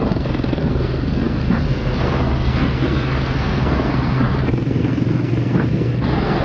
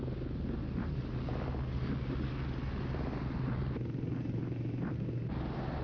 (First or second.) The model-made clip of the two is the first